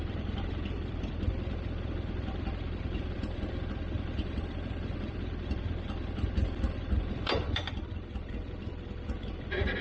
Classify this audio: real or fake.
fake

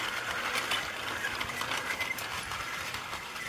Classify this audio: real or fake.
real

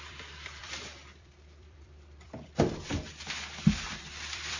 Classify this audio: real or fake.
fake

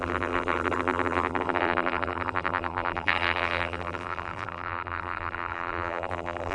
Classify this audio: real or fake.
fake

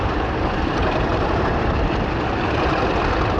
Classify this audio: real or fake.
fake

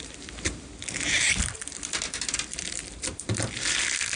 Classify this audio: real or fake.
fake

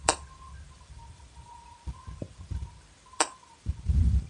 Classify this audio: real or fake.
fake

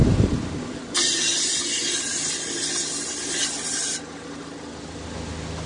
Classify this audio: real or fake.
real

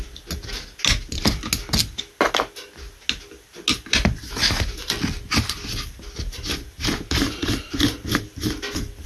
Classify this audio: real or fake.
real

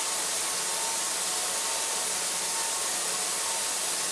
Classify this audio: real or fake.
real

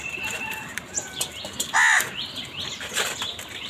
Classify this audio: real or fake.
fake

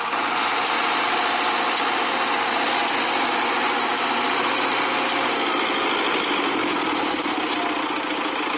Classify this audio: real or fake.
real